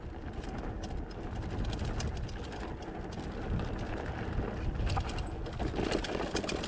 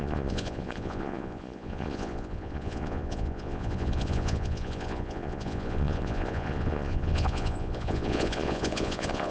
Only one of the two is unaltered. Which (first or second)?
first